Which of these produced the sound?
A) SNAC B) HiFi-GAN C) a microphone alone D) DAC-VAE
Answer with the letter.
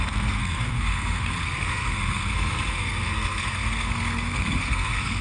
A